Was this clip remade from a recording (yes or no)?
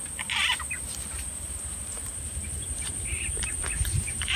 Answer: yes